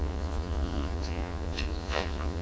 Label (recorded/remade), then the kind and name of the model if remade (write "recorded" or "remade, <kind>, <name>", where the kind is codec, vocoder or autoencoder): remade, vocoder, Vocos